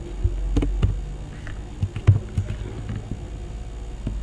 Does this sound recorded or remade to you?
recorded